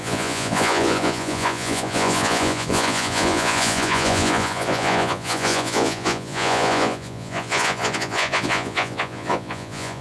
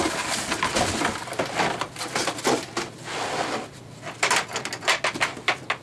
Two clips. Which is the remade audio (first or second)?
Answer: first